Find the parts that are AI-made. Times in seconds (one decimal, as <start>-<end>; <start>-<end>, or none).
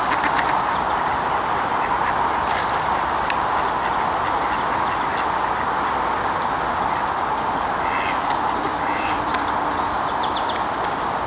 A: 8.7-9.5